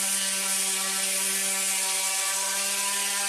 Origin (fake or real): real